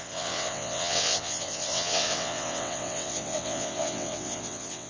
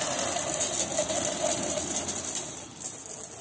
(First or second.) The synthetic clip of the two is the first